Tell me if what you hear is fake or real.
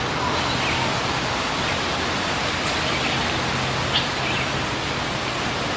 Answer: real